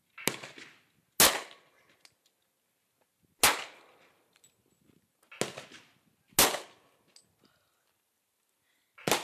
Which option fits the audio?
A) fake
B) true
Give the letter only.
B